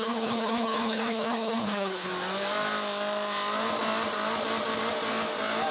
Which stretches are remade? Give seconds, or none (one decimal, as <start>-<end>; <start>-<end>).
0.0-2.1